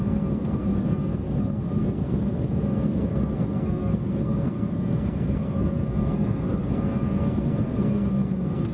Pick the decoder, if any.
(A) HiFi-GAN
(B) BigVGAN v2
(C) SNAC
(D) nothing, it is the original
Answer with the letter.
C